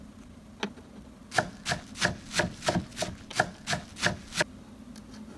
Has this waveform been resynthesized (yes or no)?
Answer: no